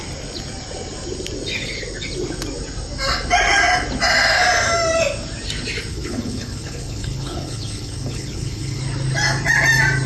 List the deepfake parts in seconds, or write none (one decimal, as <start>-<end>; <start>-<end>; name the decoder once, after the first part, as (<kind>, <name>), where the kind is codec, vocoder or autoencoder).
5.9-8.8 (codec, HILCodec)